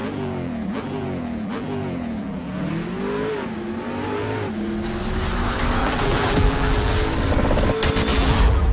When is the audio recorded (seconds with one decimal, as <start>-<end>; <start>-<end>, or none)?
2.7-5.8; 6.9-8.1